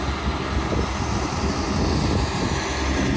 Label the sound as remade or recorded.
recorded